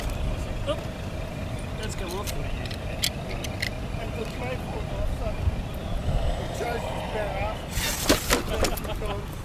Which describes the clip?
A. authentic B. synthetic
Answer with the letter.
A